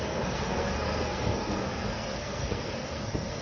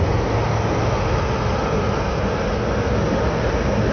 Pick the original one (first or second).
second